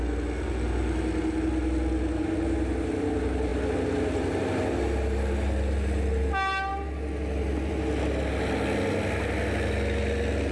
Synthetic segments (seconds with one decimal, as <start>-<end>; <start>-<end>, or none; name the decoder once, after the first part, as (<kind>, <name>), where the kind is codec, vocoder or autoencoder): none